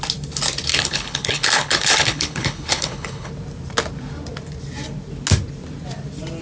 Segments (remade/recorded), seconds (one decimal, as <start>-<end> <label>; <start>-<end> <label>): 0.0-0.7 recorded; 0.7-3.3 remade; 3.3-6.4 recorded